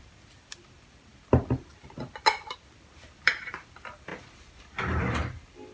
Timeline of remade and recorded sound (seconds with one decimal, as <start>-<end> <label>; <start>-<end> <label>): 0.0-1.1 remade; 1.1-1.7 recorded; 1.7-4.1 remade; 4.1-5.0 recorded; 5.0-5.7 remade